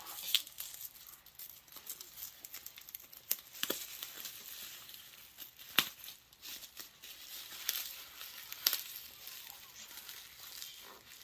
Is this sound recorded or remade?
recorded